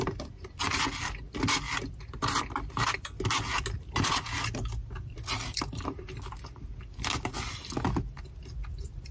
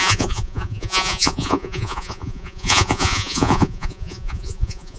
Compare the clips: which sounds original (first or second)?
first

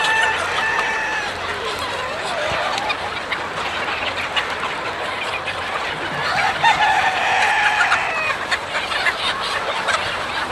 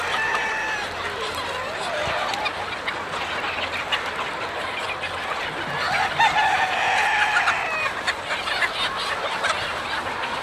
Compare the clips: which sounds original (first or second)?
second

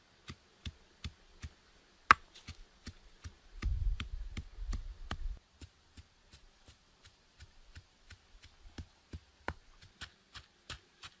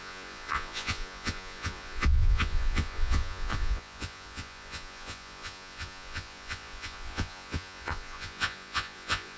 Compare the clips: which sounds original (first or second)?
first